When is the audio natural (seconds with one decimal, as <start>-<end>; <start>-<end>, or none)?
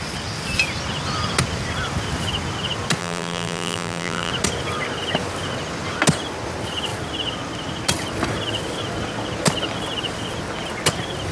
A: 0.0-3.0; 4.3-11.3